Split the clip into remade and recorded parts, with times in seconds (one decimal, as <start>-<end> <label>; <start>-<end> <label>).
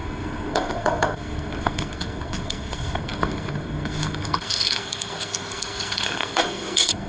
0.0-7.1 remade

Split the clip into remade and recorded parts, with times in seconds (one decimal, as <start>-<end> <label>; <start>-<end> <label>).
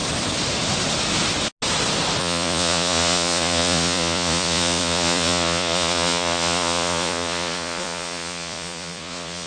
0.0-2.2 recorded; 2.2-9.5 remade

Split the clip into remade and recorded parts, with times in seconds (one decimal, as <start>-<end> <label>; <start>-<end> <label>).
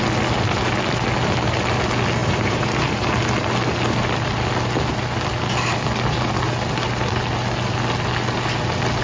0.0-2.2 recorded; 2.2-3.1 remade; 3.1-9.0 recorded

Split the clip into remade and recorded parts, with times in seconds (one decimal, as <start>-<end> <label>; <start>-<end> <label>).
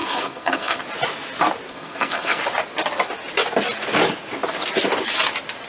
0.0-0.8 remade; 0.8-1.7 recorded; 1.7-2.4 remade; 2.4-5.7 recorded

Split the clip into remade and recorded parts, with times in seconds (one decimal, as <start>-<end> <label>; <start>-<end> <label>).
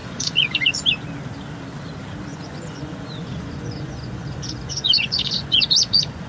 0.0-0.7 remade; 0.7-2.3 recorded; 2.3-6.3 remade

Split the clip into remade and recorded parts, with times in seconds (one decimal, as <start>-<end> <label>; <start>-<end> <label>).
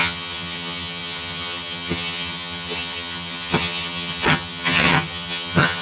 0.0-5.8 remade